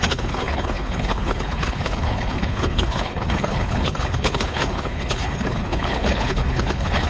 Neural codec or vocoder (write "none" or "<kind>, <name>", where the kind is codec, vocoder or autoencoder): codec, HILCodec